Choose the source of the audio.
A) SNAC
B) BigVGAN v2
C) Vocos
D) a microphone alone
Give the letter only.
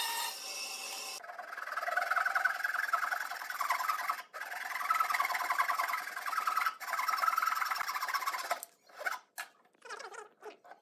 D